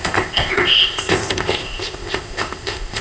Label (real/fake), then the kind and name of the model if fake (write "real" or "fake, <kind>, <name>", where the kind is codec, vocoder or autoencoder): fake, codec, ZipCodec